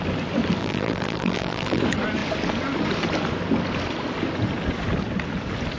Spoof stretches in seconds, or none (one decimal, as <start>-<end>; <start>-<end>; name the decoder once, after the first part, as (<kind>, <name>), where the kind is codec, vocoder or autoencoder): 0.6-1.8 (vocoder, BigVGAN v2)

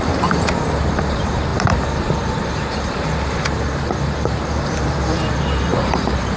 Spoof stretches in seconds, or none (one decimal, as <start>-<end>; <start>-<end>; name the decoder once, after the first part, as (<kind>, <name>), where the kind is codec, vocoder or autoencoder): 0.0-6.4 (vocoder, BigVGAN v2)

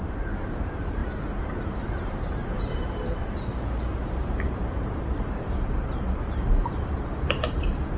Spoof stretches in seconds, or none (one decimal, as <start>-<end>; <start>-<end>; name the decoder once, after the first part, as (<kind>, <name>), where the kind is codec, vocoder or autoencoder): 0.0-8.0 (vocoder, BigVGAN v2)

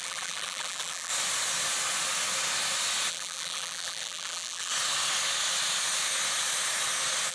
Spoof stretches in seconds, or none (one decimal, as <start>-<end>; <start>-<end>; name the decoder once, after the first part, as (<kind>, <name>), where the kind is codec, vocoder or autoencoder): 0.0-1.1 (vocoder, BigVGAN v2); 3.1-4.7

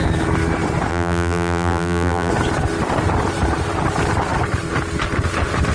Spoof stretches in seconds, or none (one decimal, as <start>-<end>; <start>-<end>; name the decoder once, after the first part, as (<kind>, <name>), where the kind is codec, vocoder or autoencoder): 0.9-2.3 (vocoder, BigVGAN v2)

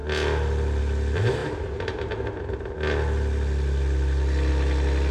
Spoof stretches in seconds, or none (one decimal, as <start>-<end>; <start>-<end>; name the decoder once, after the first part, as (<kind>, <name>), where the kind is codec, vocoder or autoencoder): none